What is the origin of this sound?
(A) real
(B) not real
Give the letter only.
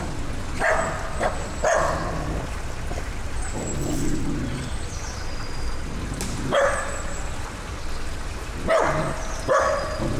A